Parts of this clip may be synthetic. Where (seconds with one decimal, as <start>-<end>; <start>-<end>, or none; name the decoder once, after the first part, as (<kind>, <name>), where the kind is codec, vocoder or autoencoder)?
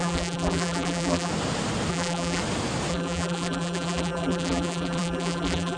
0.0-1.3 (vocoder, BigVGAN v2); 1.9-2.4; 2.9-5.8